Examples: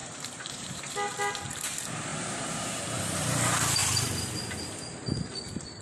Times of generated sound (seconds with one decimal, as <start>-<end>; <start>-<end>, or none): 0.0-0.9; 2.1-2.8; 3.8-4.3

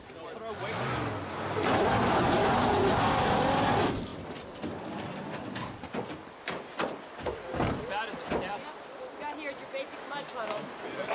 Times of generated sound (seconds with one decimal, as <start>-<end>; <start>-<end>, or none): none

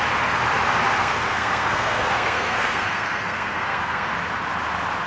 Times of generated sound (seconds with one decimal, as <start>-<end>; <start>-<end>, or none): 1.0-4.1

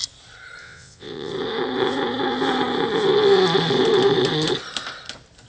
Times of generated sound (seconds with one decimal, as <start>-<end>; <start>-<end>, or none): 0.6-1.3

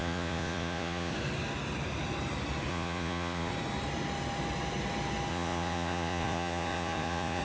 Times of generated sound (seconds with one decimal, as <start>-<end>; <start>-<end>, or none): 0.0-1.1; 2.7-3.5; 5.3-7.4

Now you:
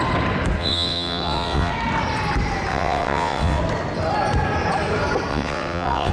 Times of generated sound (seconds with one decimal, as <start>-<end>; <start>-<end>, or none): 0.6-1.7; 2.7-3.6; 5.3-6.1

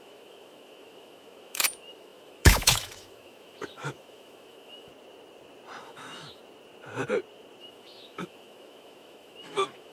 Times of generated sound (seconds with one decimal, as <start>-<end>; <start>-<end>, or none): 0.0-4.9; 5.8-6.4; 7.6-9.9

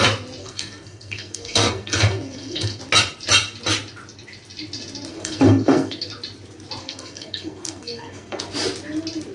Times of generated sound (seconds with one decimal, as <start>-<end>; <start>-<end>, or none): 0.4-2.8; 5.1-6.1; 6.8-8.4